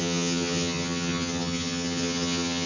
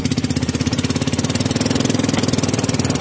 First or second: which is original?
second